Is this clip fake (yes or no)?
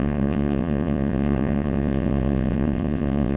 yes